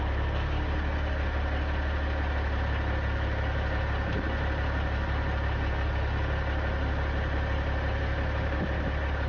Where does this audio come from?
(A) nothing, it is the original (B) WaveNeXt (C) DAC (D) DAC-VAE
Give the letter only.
A